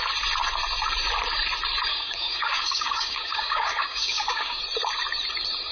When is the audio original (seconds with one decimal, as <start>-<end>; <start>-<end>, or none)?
0.0-1.9; 4.6-5.7